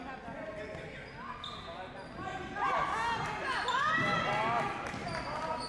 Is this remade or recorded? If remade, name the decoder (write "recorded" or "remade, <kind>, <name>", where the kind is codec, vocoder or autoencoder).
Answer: recorded